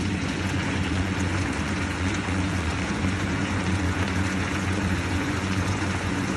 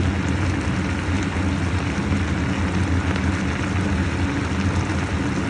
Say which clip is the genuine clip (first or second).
second